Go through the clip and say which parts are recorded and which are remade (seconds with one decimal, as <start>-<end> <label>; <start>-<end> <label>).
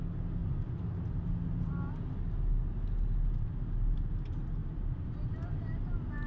0.0-6.3 recorded